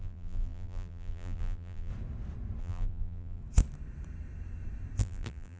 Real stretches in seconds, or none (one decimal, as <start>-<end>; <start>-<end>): 1.9-2.6; 3.4-5.0